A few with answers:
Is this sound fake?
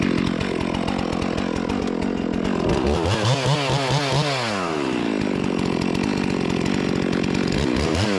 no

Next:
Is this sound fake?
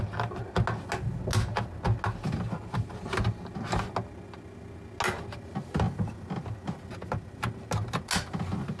no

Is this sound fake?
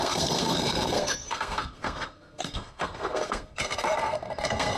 yes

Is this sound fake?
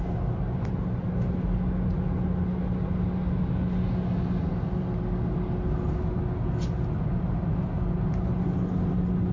no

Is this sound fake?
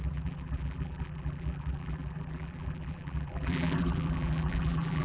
yes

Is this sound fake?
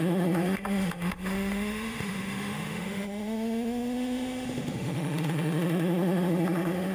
yes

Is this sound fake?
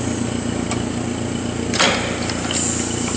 no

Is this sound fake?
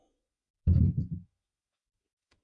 yes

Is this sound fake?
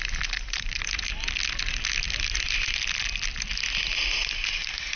no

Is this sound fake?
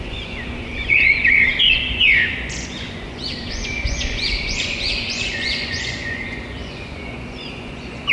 yes